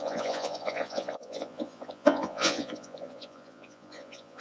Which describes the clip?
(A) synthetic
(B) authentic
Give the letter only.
A